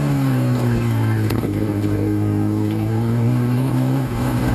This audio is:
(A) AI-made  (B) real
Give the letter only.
A